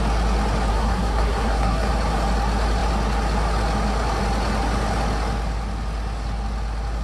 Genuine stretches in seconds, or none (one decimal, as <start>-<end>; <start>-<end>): 0.0-0.7; 1.9-7.0